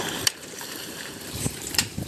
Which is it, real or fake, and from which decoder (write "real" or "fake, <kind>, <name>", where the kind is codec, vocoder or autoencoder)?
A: fake, vocoder, BigVGAN v2